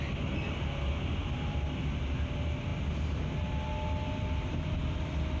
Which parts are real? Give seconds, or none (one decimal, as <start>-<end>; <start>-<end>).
0.0-5.4